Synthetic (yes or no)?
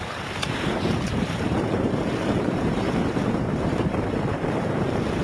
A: yes